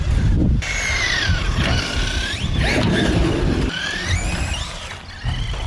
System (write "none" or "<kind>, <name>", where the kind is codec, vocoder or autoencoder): none